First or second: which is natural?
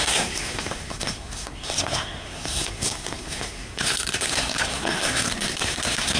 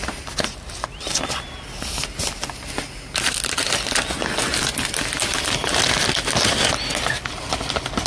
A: second